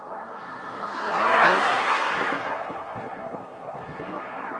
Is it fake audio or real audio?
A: fake